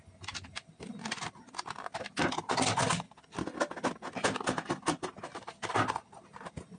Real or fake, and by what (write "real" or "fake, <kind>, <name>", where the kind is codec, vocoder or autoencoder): real